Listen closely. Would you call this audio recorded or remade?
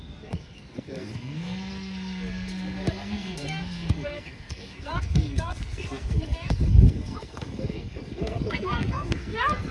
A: remade